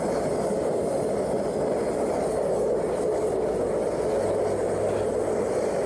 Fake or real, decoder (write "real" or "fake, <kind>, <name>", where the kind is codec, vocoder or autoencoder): real